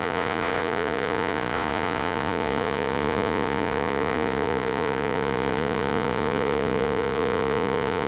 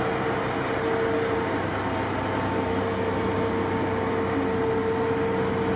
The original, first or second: second